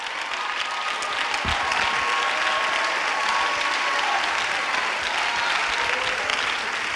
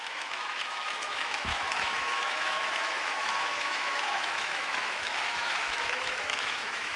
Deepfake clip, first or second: second